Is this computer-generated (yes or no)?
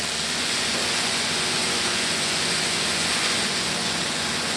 yes